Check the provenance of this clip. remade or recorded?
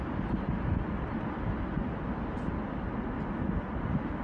recorded